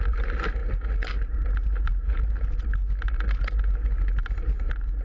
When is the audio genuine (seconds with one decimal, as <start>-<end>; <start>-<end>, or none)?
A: 0.0-5.0